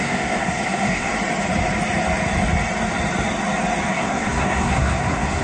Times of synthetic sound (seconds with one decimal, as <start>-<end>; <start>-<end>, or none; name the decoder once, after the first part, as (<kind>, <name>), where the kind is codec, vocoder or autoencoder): 0.0-1.1 (codec, SNAC); 3.9-5.4